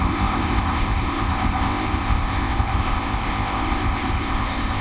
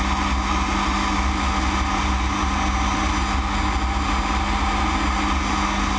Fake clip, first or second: first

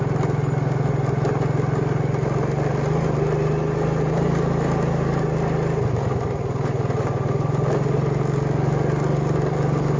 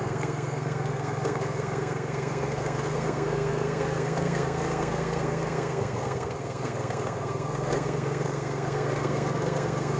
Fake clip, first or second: second